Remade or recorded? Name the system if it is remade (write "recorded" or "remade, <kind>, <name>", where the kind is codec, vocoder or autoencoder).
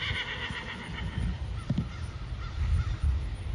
recorded